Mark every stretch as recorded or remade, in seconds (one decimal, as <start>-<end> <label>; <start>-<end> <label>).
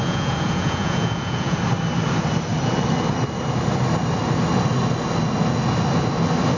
0.0-1.6 remade; 1.6-6.6 recorded